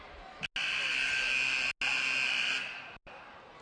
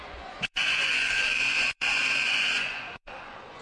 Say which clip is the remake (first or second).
second